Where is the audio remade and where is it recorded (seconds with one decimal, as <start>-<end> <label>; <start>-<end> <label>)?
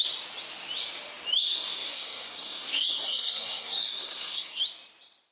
0.0-1.4 recorded; 1.4-4.6 remade; 4.6-5.3 recorded